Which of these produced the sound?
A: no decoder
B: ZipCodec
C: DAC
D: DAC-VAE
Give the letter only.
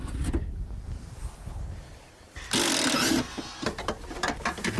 A